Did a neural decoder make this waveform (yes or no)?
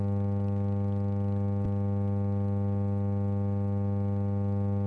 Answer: no